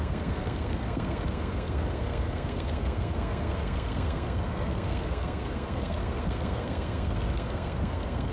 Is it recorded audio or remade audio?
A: remade